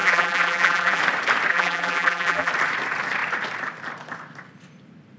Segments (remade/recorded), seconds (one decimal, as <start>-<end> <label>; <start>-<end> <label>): 0.0-1.0 remade; 1.0-1.5 recorded; 1.5-2.5 remade; 2.5-5.2 recorded

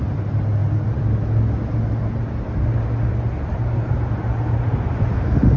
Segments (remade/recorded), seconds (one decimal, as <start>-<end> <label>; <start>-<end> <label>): 0.0-5.6 recorded

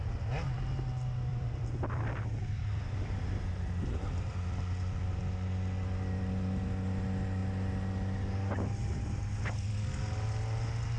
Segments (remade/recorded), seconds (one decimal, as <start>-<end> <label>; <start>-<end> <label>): 0.0-1.3 recorded; 1.3-5.2 remade; 5.2-11.0 recorded

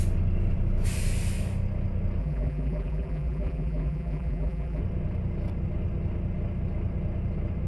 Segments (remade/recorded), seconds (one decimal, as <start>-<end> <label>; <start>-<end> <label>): 0.0-2.2 recorded; 2.2-4.8 remade; 4.8-7.7 recorded

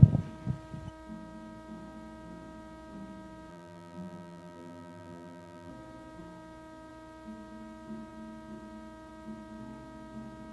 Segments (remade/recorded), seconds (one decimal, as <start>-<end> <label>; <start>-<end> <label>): 0.0-3.5 recorded; 3.5-5.7 remade; 5.7-10.5 recorded

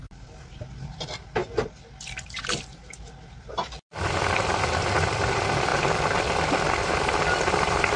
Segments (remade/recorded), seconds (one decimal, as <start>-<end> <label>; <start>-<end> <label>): 0.0-1.4 remade; 1.4-3.4 recorded; 3.4-5.7 remade; 5.7-7.5 recorded; 7.5-8.0 remade